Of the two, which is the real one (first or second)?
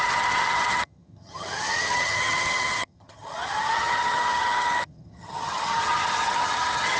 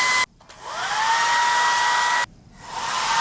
second